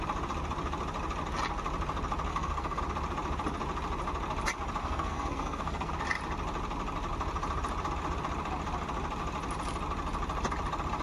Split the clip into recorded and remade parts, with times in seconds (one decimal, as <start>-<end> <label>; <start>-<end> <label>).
0.0-2.3 recorded; 2.3-2.8 remade; 2.8-4.8 recorded; 4.8-5.9 remade; 5.9-11.0 recorded